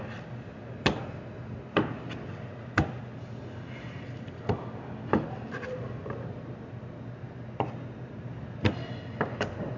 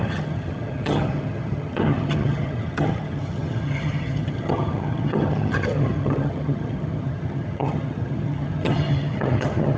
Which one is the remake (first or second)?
second